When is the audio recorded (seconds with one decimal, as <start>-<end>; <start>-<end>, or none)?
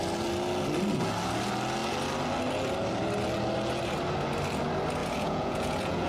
0.0-5.0